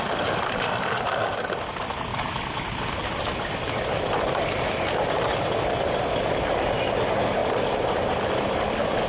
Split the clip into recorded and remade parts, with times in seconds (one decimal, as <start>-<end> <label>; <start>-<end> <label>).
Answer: 0.0-9.1 recorded